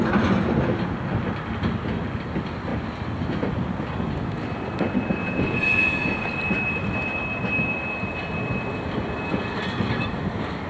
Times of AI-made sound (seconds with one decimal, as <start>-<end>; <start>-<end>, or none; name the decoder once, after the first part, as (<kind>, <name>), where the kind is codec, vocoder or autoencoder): 5.2-6.3 (vocoder, Vocos)